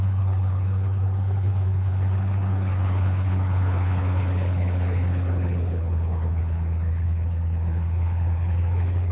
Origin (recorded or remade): remade